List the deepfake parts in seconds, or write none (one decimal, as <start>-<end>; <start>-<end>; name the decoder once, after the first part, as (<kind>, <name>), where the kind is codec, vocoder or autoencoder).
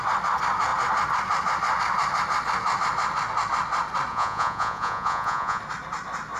4.1-5.6 (vocoder, Vocos)